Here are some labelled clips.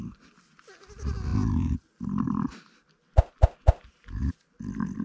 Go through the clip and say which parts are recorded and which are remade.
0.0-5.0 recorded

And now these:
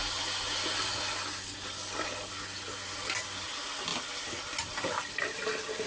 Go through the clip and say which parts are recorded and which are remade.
0.0-3.9 recorded; 3.9-5.4 remade; 5.4-5.9 recorded

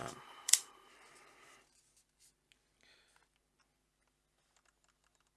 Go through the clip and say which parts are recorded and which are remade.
0.0-0.9 remade; 0.9-5.4 recorded

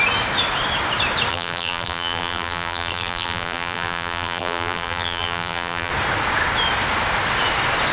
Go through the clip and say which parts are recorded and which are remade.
0.0-1.3 recorded; 1.3-5.9 remade; 5.9-7.9 recorded

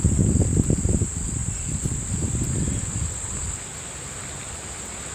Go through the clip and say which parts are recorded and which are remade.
0.0-1.4 recorded; 1.4-2.6 remade; 2.6-3.7 recorded; 3.7-4.4 remade; 4.4-5.1 recorded